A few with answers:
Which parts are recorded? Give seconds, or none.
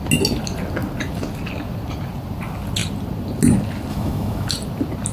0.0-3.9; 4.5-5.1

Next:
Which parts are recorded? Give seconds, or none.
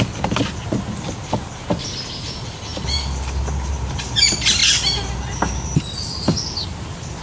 0.0-7.2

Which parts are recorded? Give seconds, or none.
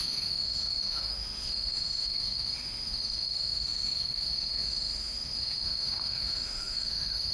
none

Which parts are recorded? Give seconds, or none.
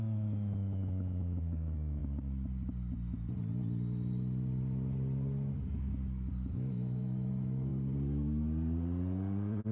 2.0-6.5; 7.7-9.7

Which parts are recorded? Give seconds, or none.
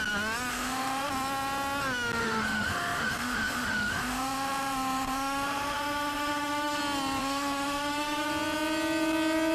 0.0-0.5; 1.1-2.2; 6.8-7.2; 8.3-9.5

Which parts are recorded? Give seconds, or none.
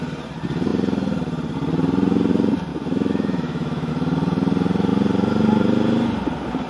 0.0-2.7; 3.9-6.7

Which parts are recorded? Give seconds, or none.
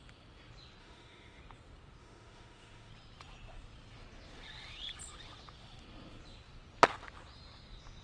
0.0-0.8; 1.4-2.0; 2.9-8.0